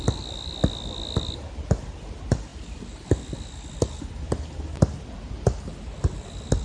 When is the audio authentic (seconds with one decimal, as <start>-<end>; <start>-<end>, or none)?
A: 0.0-6.6